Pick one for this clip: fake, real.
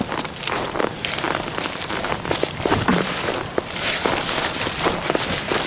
fake